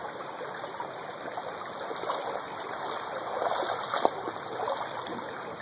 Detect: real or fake real